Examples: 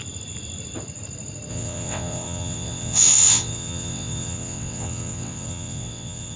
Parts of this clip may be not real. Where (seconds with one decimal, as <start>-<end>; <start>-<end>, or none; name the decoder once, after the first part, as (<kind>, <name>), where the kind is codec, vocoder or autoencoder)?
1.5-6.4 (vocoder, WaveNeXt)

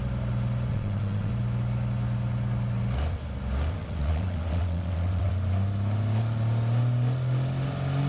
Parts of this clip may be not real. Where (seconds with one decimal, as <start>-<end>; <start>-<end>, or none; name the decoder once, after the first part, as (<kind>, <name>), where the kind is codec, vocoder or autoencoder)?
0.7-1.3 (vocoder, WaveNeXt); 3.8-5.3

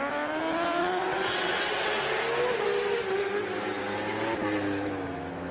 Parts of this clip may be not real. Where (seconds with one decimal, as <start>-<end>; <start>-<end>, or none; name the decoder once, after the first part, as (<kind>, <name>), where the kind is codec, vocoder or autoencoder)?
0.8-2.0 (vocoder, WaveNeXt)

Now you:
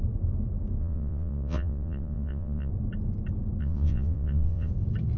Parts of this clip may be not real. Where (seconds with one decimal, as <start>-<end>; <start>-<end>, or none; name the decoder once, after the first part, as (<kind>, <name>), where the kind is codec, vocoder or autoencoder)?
0.8-2.7 (vocoder, WaveNeXt); 3.6-4.7

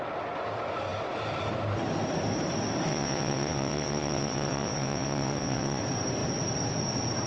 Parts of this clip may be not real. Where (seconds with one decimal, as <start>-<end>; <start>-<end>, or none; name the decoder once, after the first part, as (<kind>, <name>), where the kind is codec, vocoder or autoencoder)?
2.9-5.8 (vocoder, WaveNeXt)

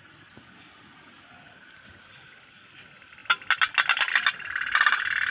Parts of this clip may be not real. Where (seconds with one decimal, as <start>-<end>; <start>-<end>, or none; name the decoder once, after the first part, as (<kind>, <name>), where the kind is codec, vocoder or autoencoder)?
none

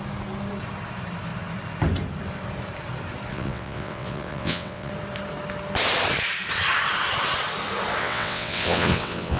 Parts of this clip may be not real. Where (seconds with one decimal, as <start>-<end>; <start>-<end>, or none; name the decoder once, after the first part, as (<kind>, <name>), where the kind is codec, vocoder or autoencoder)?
3.3-4.9 (vocoder, WaveNeXt); 8.0-9.4

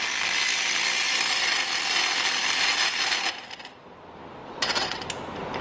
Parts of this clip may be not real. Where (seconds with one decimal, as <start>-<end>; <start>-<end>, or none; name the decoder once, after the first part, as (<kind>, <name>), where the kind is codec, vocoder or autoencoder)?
4.4-5.1 (vocoder, WaveNeXt)